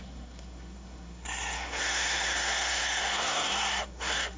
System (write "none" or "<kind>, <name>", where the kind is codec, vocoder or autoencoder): codec, SNAC